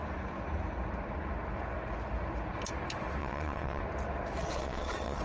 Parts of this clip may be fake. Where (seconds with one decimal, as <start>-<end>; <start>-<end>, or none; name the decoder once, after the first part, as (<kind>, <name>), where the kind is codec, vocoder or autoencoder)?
3.2-3.8 (vocoder, WaveNeXt); 4.4-5.2